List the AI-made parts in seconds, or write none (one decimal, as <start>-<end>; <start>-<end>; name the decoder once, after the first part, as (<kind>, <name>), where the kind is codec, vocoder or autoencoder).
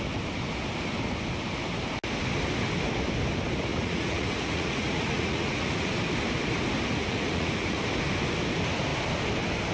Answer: 3.7-5.9 (vocoder, Vocos); 7.0-7.8